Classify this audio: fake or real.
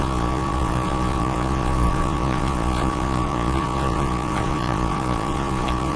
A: fake